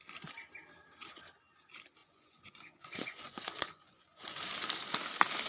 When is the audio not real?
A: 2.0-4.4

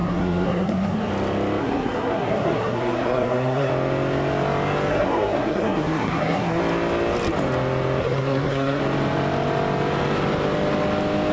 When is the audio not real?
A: 0.0-1.1; 1.6-3.7; 4.9-6.6; 8.0-8.8